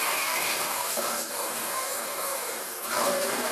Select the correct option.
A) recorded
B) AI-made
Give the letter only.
B